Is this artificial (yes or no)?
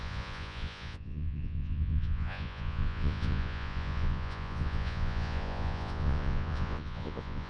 yes